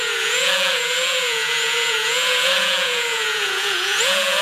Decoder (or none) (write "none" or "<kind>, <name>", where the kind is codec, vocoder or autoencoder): vocoder, Vocos